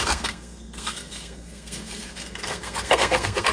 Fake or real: fake